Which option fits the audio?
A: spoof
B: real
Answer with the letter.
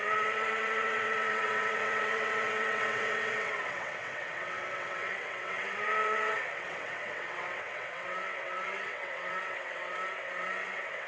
A